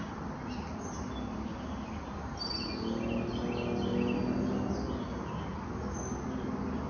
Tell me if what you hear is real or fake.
real